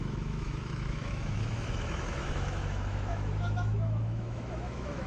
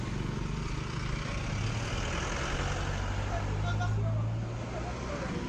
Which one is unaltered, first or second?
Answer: second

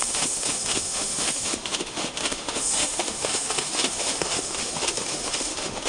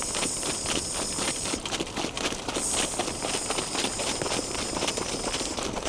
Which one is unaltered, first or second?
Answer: second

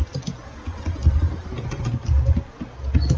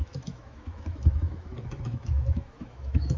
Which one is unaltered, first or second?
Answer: first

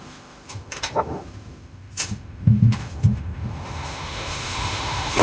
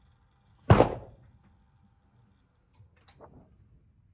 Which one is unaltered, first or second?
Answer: second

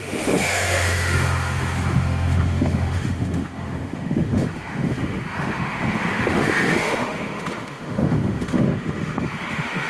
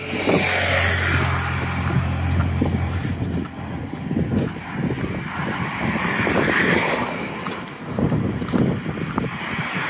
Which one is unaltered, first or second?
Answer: second